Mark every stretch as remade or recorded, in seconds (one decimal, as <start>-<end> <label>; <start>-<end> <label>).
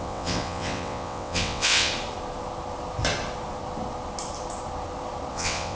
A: 0.0-1.9 remade; 1.9-5.3 recorded; 5.3-5.7 remade